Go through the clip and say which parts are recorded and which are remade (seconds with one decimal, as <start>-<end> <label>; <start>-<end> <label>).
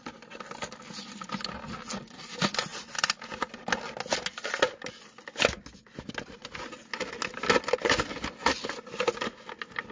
0.0-9.9 recorded